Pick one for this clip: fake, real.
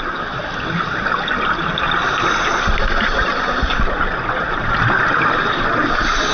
real